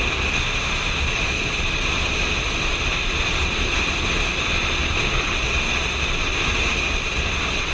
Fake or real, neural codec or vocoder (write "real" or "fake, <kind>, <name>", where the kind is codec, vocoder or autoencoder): real